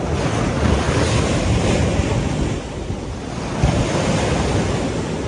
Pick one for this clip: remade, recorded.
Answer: recorded